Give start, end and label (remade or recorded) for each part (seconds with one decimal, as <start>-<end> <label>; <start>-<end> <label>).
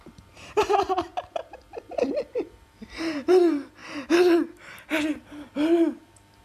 0.0-1.1 remade; 1.1-2.3 recorded; 2.3-3.8 remade; 3.8-5.1 recorded; 5.1-6.4 remade